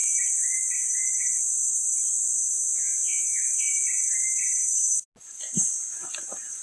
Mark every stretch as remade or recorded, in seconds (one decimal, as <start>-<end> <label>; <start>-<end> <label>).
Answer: 0.0-2.5 recorded; 2.5-3.4 remade; 3.4-6.6 recorded